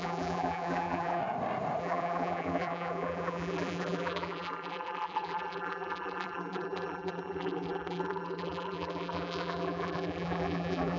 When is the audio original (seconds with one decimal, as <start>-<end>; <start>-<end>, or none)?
1.2-1.8